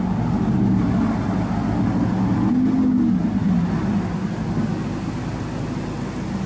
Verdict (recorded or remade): recorded